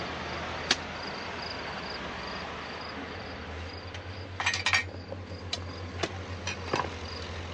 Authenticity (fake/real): real